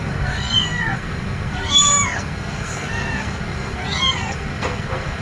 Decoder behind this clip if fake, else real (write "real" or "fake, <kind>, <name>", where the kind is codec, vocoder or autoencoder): fake, codec, SNAC